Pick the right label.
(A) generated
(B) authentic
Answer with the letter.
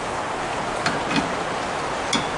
B